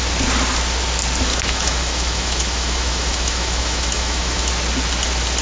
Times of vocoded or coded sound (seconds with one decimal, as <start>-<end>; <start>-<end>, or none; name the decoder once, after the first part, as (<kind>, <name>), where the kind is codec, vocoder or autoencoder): 1.3-4.5 (autoencoder, DAC-VAE)